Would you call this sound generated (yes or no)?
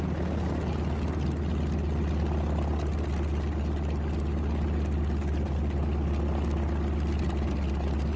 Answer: no